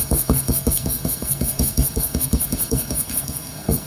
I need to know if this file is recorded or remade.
remade